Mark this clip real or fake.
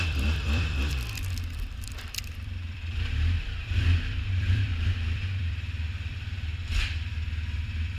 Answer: fake